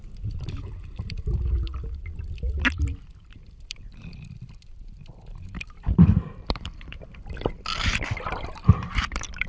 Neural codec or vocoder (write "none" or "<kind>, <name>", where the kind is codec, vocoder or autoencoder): vocoder, BigVGAN v2